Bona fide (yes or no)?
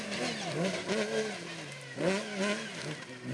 yes